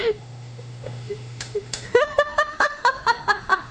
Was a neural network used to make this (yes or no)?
yes